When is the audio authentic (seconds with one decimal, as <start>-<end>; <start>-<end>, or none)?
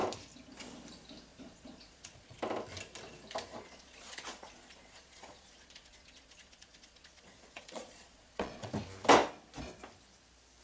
0.0-1.3; 2.4-3.5; 8.7-10.6